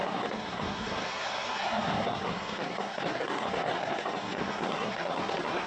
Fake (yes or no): yes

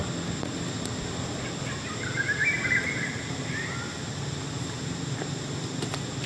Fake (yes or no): no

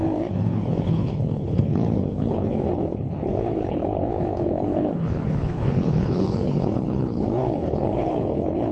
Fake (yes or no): yes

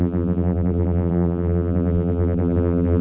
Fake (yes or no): yes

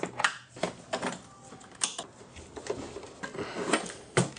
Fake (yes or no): no